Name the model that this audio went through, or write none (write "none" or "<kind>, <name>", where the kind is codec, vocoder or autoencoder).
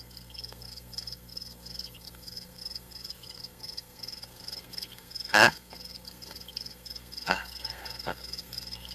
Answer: codec, SNAC